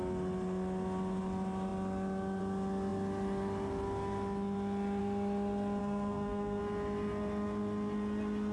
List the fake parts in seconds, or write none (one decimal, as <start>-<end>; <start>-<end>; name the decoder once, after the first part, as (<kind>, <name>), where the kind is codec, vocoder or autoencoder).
5.8-6.6 (codec, SNAC)